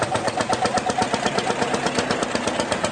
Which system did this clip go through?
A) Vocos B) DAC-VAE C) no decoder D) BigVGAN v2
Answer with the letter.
C